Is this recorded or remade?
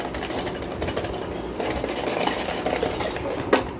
recorded